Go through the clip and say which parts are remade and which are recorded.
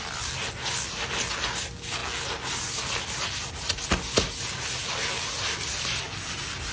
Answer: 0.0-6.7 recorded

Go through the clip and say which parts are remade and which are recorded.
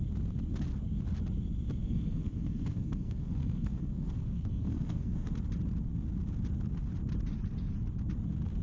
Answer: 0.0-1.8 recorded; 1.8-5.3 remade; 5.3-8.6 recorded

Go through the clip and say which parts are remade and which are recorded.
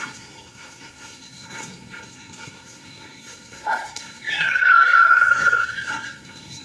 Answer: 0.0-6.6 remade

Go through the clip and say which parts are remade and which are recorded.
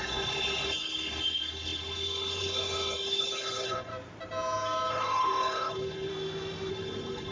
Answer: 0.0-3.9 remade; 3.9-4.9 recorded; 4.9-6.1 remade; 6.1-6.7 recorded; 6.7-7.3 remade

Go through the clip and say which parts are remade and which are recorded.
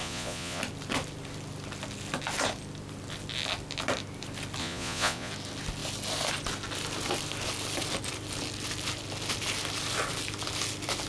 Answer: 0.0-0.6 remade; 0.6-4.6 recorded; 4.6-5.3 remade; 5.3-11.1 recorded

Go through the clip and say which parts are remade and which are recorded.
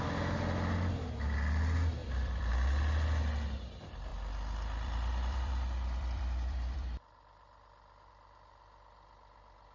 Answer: 0.0-2.0 recorded; 2.0-2.5 remade; 2.5-4.1 recorded; 4.1-8.1 remade; 8.1-9.7 recorded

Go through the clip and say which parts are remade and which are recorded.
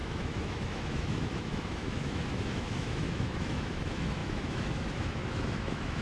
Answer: 0.0-6.0 remade